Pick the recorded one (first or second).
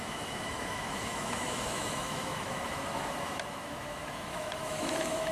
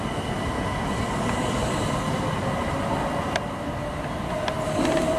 second